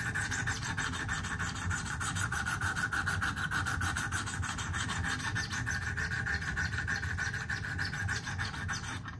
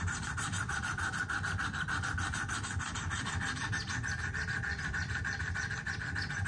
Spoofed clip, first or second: second